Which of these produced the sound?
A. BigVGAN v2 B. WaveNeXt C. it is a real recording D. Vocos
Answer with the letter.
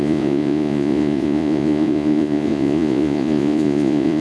D